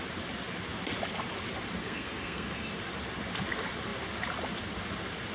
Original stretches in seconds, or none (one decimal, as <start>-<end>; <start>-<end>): 0.0-1.8; 2.7-5.3